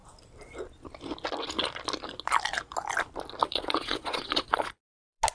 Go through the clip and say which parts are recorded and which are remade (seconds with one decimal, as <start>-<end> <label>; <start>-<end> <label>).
0.0-3.4 recorded; 3.4-4.8 remade; 4.8-5.3 recorded